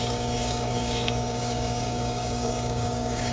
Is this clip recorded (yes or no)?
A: no